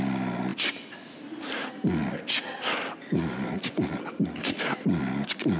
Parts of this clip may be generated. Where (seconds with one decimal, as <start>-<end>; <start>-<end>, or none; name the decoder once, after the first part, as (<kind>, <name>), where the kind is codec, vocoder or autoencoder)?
none